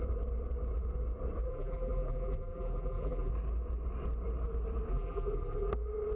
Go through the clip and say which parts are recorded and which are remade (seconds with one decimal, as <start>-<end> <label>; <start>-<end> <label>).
0.0-1.5 recorded; 1.5-3.3 remade; 3.3-4.9 recorded; 4.9-5.7 remade; 5.7-6.2 recorded